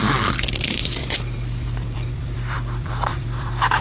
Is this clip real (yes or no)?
no